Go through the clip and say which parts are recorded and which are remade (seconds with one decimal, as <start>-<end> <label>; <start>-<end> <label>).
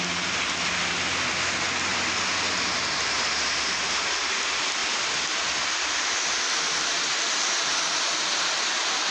0.0-9.1 recorded